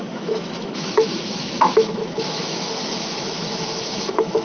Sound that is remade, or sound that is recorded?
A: remade